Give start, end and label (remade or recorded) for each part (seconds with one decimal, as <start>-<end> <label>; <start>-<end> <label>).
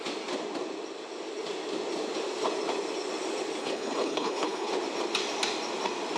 0.0-3.6 recorded; 3.6-4.7 remade; 4.7-6.2 recorded